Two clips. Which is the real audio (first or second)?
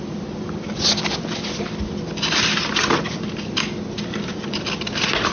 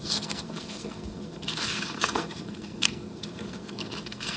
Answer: first